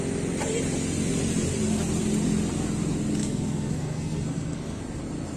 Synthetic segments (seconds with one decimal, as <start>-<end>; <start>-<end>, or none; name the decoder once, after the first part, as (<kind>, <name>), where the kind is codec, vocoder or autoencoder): 3.2-4.8 (codec, SNAC)